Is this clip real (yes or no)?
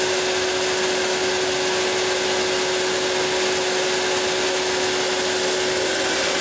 yes